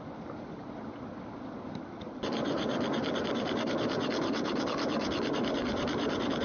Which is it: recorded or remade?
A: recorded